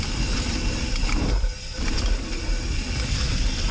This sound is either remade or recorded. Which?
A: recorded